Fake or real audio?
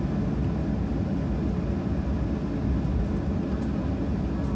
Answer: real